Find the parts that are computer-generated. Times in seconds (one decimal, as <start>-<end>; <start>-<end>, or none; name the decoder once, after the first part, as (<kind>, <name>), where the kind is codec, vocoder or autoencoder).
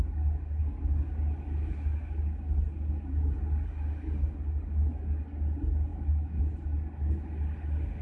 5.9-6.4 (autoencoder, DAC-VAE)